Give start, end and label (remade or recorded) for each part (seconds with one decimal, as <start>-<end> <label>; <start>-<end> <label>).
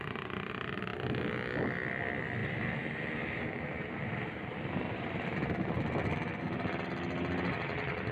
0.0-2.4 recorded; 2.4-5.7 remade; 5.7-8.1 recorded